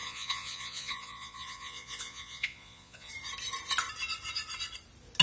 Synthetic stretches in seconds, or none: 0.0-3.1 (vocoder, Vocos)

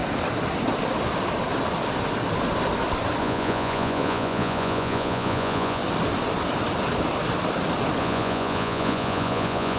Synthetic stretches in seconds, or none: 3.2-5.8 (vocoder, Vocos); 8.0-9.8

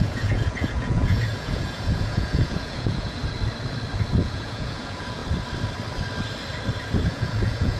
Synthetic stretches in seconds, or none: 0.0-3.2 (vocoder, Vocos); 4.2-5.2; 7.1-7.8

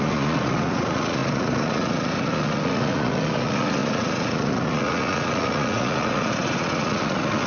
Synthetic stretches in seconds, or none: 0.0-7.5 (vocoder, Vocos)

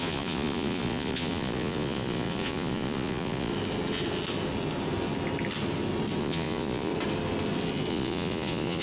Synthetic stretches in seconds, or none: 0.0-3.5 (vocoder, Vocos); 6.2-6.9; 7.9-8.8

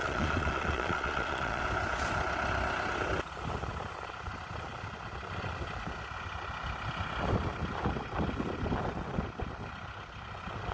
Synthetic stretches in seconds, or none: 0.0-1.6 (vocoder, Vocos)